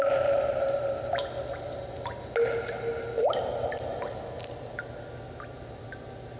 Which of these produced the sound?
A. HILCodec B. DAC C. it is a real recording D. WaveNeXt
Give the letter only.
C